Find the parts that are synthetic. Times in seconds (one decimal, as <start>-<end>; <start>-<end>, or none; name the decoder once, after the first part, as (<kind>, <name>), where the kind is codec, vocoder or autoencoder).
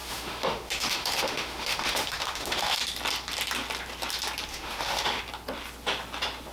0.0-2.8 (autoencoder, DAC-VAE); 4.5-5.2